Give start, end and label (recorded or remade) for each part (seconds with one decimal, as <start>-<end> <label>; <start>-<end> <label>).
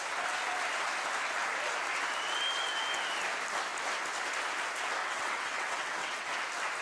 0.0-5.0 recorded; 5.0-6.3 remade; 6.3-6.8 recorded